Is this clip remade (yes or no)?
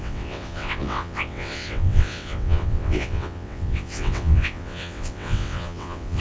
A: yes